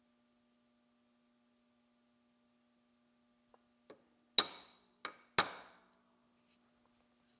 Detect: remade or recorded recorded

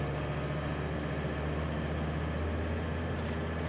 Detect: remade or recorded recorded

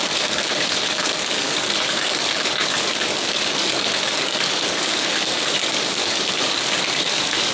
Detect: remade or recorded remade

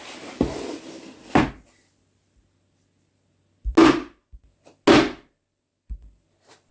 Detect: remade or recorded recorded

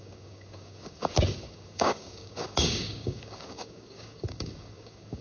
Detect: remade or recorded remade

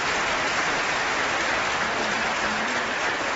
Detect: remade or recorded recorded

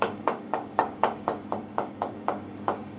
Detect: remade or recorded remade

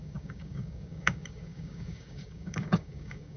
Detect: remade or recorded remade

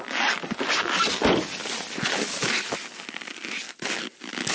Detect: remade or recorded recorded